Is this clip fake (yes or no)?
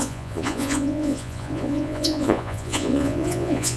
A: yes